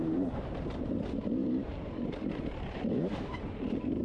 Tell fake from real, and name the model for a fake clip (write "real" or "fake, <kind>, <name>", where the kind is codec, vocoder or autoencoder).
fake, vocoder, BigVGAN v2